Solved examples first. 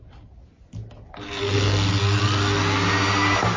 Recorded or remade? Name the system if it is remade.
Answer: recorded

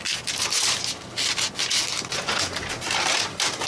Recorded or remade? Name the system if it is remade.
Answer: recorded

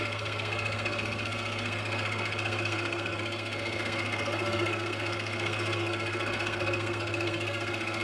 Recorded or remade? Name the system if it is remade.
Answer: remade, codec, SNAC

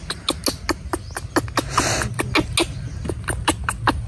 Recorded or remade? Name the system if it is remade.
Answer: recorded